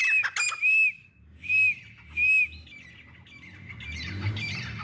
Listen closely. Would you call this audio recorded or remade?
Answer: recorded